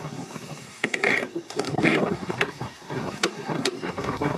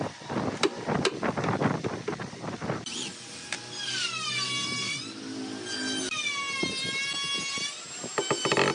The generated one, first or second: first